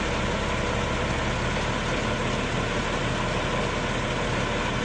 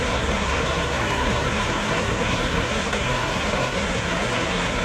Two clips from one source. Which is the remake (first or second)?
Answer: second